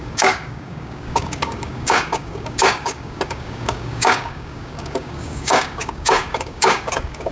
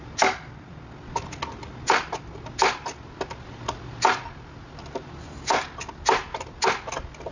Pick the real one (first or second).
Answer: second